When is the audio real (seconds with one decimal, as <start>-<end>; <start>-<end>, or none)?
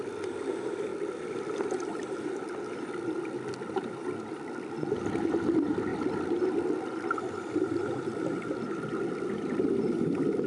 0.0-10.5